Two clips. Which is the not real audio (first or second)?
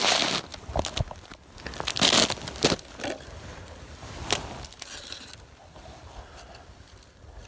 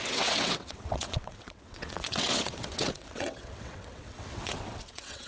second